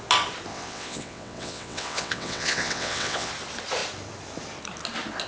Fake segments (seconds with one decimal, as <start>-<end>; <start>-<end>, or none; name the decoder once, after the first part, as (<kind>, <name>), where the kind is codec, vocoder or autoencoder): 0.5-3.3 (vocoder, WaveNeXt)